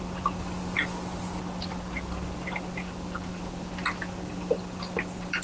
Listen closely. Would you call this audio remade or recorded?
recorded